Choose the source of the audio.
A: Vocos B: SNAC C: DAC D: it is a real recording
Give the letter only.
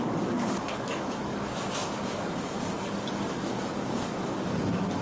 C